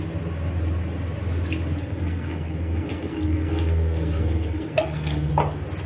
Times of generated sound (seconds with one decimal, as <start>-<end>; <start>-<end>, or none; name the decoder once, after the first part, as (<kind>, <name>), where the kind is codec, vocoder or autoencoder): 1.8-5.3 (codec, SNAC)

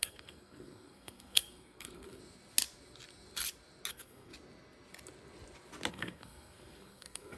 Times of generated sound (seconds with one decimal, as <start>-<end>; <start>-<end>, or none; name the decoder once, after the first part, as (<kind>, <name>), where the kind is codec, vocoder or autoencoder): 0.0-2.2 (codec, SNAC); 3.9-4.3; 5.9-7.4

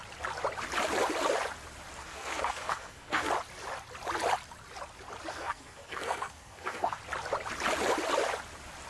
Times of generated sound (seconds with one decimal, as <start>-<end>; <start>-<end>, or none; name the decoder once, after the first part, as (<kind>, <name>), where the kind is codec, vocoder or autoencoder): 2.0-3.3 (codec, SNAC); 5.3-7.0

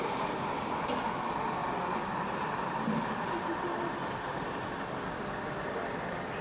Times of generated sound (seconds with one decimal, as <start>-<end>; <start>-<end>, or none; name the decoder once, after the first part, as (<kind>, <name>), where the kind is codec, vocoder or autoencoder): none

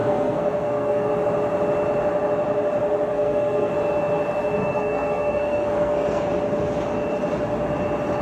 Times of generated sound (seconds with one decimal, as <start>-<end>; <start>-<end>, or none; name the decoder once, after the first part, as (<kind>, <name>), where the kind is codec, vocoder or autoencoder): 0.0-1.1 (codec, SNAC); 3.1-3.7; 4.6-6.3

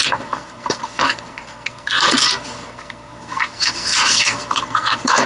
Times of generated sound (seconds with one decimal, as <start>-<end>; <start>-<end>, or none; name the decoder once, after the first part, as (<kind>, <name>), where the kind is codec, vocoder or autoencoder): 0.0-5.3 (codec, SNAC)

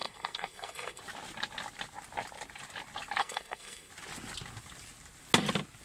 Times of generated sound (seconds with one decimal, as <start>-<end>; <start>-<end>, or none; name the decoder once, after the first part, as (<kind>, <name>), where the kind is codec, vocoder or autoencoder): 0.0-1.0 (codec, SNAC); 3.2-3.9